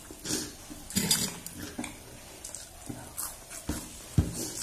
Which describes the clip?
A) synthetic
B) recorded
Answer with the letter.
B